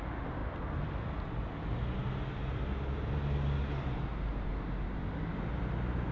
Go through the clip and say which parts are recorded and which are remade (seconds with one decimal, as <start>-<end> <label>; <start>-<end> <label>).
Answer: 0.0-6.1 recorded